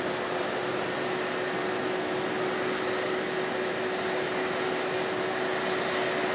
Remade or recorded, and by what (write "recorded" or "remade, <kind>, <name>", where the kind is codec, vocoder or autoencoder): recorded